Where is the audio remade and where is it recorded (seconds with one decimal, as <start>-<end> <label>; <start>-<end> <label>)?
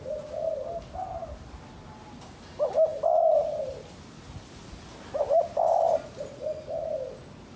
0.0-7.6 recorded